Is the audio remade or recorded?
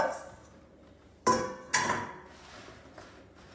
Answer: recorded